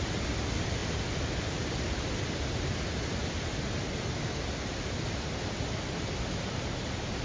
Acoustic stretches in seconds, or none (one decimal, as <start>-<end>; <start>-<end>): 0.0-7.2